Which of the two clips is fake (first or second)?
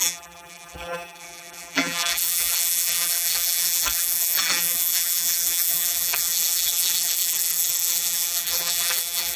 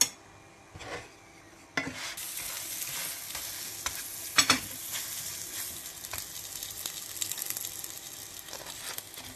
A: first